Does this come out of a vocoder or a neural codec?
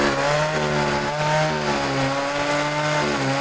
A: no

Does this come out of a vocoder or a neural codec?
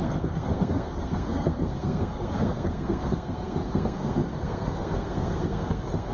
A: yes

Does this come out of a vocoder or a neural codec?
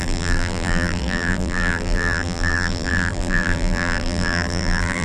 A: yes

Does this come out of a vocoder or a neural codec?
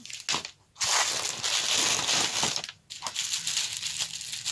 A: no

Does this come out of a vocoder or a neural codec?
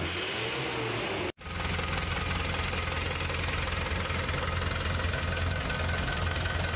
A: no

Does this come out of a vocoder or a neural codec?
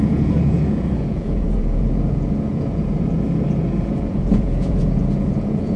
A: yes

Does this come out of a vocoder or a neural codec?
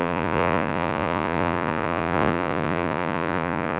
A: yes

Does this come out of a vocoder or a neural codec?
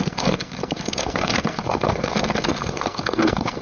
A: yes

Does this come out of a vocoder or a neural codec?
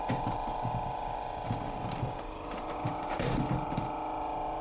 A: yes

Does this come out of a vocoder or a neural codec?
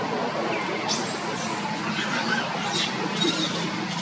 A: no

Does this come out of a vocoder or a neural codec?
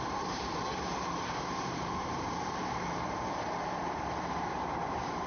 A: yes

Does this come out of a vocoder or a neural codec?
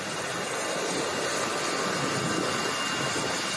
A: no